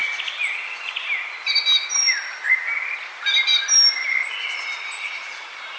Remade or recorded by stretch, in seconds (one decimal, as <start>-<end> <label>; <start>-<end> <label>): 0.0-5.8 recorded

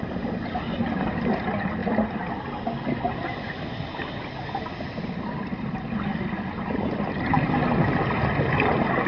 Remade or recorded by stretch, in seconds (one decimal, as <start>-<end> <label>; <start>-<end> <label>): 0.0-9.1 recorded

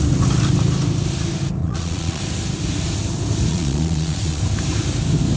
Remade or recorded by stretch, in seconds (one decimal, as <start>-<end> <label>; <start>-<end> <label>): 0.0-1.6 recorded; 1.6-2.2 remade; 2.2-3.5 recorded; 3.5-4.4 remade; 4.4-5.4 recorded